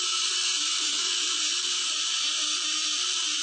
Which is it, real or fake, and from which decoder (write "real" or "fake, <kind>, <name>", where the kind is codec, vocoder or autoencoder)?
real